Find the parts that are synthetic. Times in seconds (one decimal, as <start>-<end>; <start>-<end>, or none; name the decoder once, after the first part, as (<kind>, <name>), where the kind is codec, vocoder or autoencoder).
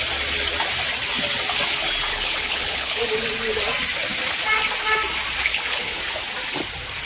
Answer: 2.1-3.0 (codec, HILCodec); 5.5-6.0